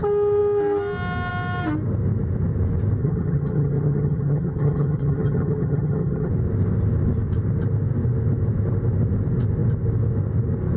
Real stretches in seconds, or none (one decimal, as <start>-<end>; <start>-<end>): 0.0-3.0; 6.3-10.8